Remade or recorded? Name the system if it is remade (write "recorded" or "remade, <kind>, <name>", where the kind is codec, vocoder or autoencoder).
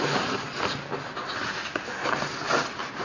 recorded